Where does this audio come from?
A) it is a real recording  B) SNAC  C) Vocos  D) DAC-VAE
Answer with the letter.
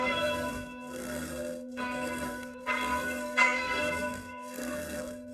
B